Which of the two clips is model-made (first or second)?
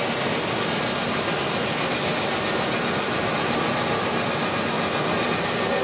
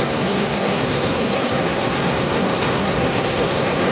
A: second